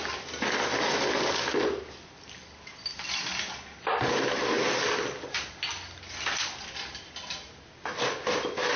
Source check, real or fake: real